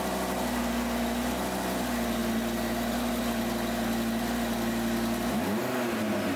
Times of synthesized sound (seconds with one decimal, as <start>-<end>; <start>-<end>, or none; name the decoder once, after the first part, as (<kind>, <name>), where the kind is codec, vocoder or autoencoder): none

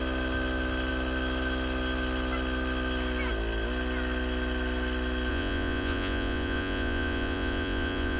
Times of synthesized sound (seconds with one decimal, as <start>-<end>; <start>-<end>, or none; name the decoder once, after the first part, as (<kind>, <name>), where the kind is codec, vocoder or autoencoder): 5.3-8.2 (vocoder, Vocos)

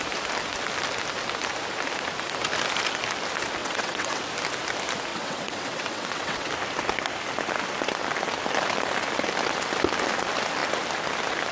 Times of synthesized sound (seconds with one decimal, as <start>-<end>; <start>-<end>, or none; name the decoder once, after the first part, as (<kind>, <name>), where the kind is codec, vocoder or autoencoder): 3.6-4.2 (vocoder, WaveNeXt); 5.1-6.5

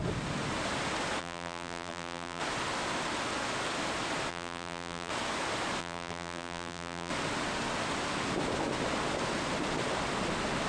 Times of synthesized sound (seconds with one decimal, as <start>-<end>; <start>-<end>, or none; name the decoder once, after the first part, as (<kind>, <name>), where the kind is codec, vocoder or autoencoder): 1.2-2.4 (vocoder, BigVGAN v2); 4.3-5.1; 5.8-7.1